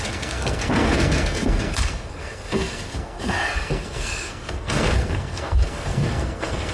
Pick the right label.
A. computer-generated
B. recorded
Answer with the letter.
A